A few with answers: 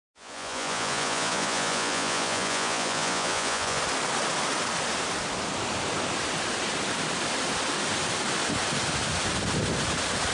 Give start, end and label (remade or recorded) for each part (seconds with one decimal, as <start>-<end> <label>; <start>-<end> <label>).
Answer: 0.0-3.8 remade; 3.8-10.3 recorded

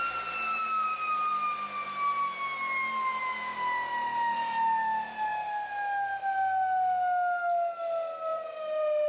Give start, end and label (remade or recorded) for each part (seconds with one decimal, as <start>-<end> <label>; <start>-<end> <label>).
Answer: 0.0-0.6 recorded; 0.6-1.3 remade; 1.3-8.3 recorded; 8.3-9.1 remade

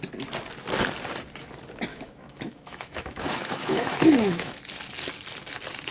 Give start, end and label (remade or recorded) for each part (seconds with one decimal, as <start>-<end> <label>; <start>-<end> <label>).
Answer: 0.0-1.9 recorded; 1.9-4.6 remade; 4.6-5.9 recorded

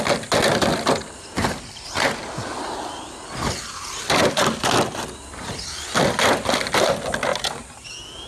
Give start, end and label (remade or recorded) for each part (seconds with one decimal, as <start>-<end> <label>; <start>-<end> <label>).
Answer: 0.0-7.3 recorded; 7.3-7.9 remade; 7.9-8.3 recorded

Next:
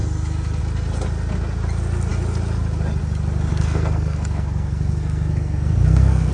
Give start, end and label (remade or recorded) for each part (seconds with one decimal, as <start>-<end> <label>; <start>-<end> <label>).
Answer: 0.0-3.5 recorded; 3.5-6.3 remade

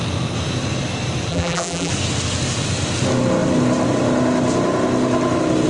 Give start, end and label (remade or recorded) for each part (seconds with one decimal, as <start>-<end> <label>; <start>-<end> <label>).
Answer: 0.0-1.3 recorded; 1.3-1.9 remade; 1.9-5.7 recorded

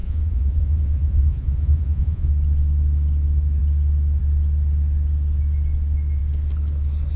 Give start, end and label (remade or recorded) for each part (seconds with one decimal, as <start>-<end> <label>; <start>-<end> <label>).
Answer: 0.0-2.3 remade; 2.3-7.2 recorded

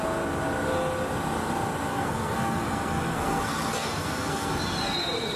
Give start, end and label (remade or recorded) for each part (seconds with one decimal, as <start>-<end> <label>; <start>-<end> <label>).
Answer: 0.0-1.9 recorded; 1.9-4.5 remade; 4.5-5.4 recorded